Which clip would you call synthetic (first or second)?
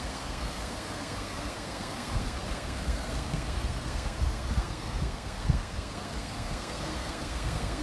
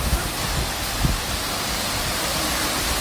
first